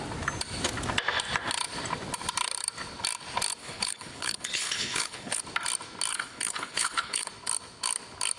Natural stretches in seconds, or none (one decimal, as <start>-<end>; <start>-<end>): 0.0-3.6; 5.4-6.1; 7.3-8.4